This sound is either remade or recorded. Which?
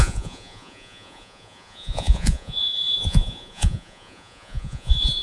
remade